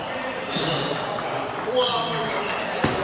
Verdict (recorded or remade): recorded